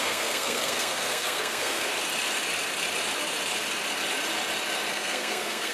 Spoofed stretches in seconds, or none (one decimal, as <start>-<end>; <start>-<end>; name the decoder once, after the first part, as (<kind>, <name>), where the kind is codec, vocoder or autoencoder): 0.0-1.9 (codec, SNAC); 4.9-5.7